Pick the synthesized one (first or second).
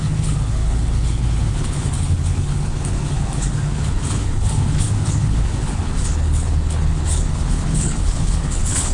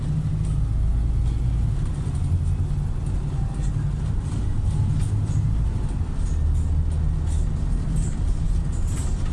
first